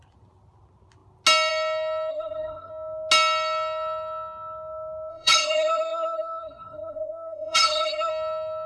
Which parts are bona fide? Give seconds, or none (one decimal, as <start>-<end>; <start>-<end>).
0.0-2.1; 2.7-5.1; 8.1-8.7